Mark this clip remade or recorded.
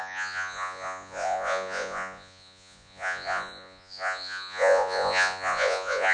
remade